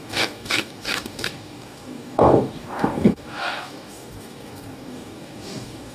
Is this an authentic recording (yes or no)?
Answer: no